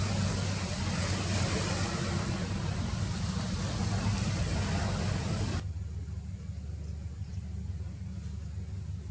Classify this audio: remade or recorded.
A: recorded